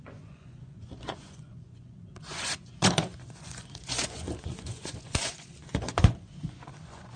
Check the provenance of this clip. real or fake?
fake